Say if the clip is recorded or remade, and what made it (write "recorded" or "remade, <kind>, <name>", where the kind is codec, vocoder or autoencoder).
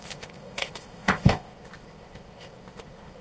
remade, codec, ZipCodec